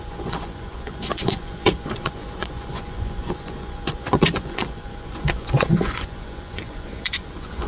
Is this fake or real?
fake